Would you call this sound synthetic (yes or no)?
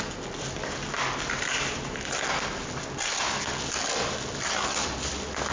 no